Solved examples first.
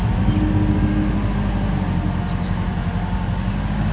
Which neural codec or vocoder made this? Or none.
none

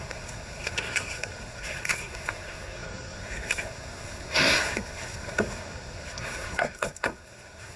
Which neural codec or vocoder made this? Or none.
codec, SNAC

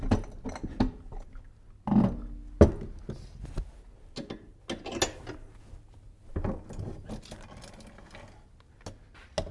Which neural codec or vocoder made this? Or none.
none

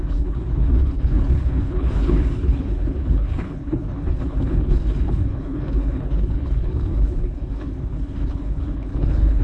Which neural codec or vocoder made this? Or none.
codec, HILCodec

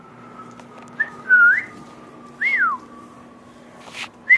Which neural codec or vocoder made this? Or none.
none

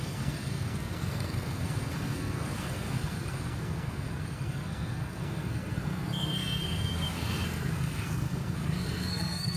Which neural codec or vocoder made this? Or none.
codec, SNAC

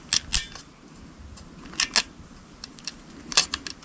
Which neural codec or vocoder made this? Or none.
none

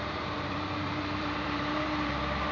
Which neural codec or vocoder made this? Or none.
vocoder, BigVGAN v2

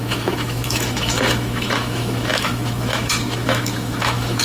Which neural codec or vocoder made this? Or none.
autoencoder, DAC-VAE